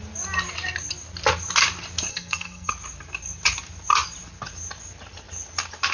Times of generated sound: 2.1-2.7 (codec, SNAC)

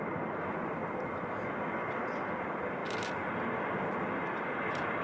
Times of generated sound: none

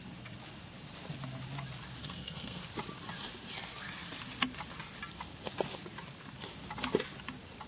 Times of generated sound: 2.0-2.6 (codec, SNAC)

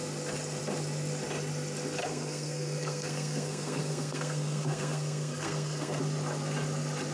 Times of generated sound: 2.0-6.0 (codec, SNAC)

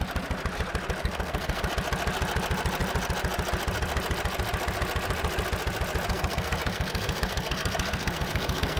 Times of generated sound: 1.0-1.7 (codec, SNAC); 6.1-8.8

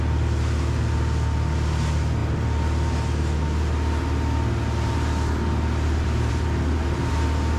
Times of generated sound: none

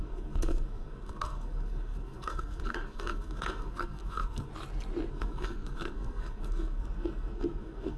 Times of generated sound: 0.0-4.5 (codec, SNAC); 5.1-8.0